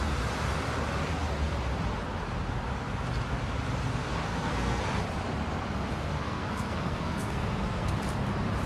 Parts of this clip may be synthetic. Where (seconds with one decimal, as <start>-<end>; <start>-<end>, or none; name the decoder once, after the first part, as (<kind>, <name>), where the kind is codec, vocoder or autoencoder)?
4.1-4.8 (codec, SNAC); 6.0-8.0